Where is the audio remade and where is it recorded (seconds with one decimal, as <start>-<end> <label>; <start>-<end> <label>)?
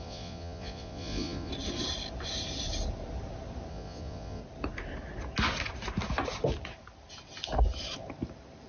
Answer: 0.0-1.5 remade; 1.5-3.7 recorded; 3.7-4.4 remade; 4.4-8.7 recorded